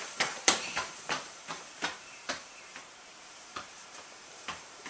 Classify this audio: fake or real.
fake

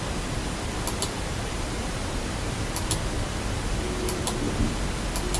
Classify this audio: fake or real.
real